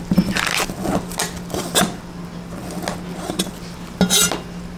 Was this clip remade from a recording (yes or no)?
no